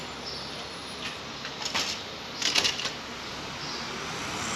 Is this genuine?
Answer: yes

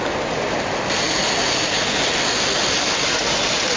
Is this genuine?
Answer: yes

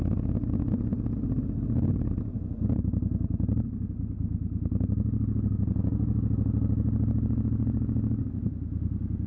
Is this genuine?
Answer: yes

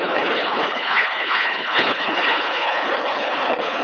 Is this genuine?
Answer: no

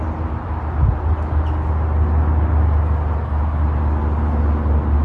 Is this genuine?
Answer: yes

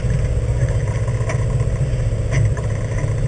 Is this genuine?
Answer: yes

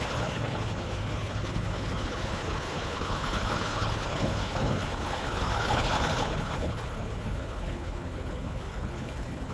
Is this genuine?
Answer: no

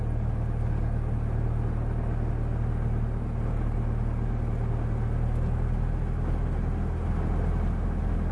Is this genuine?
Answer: yes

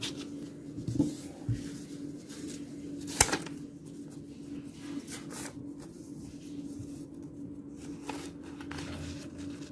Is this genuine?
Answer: yes